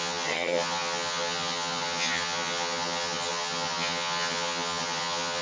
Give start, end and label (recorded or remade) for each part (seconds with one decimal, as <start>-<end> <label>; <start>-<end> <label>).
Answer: 0.0-5.4 remade